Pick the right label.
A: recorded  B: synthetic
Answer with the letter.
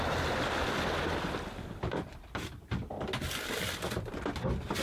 A